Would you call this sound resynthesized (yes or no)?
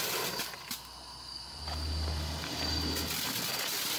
no